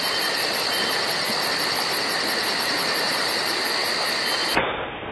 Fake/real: real